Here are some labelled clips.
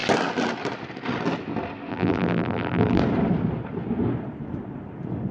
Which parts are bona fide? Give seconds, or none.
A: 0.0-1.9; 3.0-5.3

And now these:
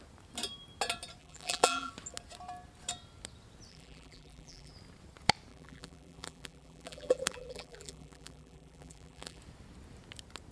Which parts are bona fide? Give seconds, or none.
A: 0.0-1.2; 1.9-3.7; 4.7-5.5; 9.4-10.5